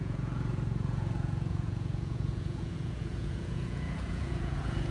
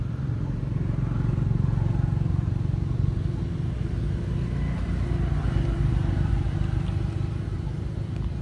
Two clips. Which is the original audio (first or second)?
second